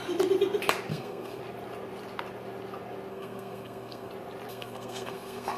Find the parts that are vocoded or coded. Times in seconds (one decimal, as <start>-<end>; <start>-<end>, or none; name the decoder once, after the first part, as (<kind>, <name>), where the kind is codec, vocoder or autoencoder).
0.9-1.4 (codec, SNAC); 3.1-4.1; 4.5-5.6

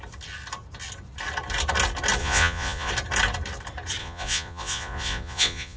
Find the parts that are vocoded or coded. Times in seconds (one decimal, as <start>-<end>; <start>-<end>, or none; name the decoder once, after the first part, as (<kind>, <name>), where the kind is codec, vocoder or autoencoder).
2.2-2.9 (vocoder, Vocos); 4.0-5.8

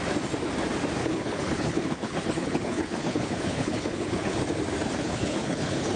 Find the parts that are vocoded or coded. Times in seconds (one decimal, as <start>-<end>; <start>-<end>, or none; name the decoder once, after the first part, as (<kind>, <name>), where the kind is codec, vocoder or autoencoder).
1.0-4.4 (codec, HILCodec); 5.0-6.0